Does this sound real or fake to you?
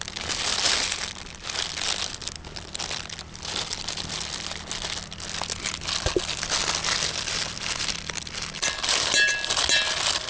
real